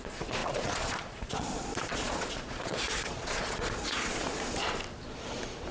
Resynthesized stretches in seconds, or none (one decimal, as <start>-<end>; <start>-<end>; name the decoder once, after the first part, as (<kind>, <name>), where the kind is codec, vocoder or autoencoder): 0.0-4.3 (vocoder, Vocos)